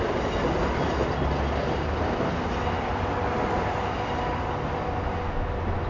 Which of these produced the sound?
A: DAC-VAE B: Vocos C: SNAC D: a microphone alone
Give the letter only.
D